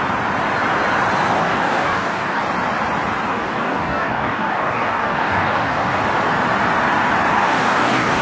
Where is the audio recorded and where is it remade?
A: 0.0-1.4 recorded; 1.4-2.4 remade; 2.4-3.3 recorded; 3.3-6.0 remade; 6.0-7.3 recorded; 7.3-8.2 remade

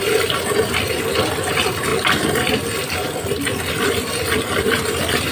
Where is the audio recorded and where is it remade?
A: 0.0-5.3 recorded

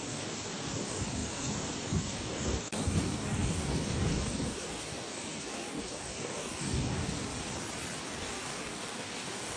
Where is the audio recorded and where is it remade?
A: 0.0-7.3 remade; 7.3-8.0 recorded; 8.0-9.6 remade

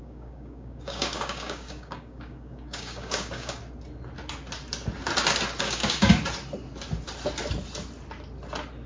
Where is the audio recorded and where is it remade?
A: 0.0-3.6 remade; 3.6-5.6 recorded; 5.6-6.2 remade; 6.2-8.9 recorded

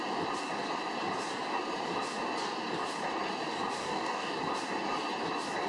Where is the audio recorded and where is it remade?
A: 0.0-3.8 recorded; 3.8-4.4 remade; 4.4-5.7 recorded

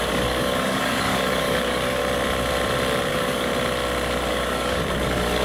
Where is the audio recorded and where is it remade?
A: 0.0-2.0 remade; 2.0-3.1 recorded; 3.1-3.5 remade; 3.5-4.3 recorded; 4.3-5.4 remade

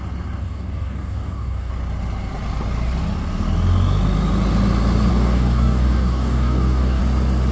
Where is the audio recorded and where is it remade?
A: 0.0-0.4 recorded; 0.4-1.7 remade; 1.7-5.1 recorded; 5.1-7.0 remade; 7.0-7.5 recorded

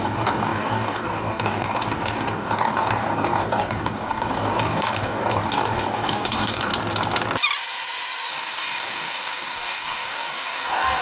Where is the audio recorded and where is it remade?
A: 0.0-6.7 remade; 6.7-8.3 recorded; 8.3-11.0 remade